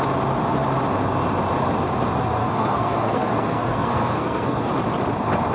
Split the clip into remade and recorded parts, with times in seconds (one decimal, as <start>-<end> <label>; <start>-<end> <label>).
0.0-2.4 recorded; 2.4-4.7 remade; 4.7-5.5 recorded